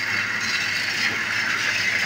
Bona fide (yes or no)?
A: yes